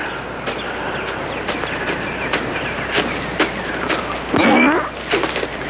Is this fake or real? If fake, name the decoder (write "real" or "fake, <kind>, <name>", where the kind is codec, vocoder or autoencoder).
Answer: real